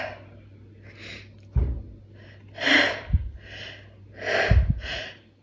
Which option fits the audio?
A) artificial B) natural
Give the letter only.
B